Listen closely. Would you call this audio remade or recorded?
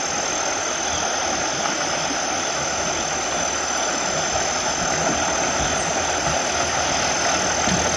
recorded